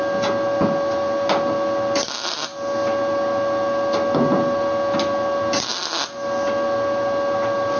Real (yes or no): yes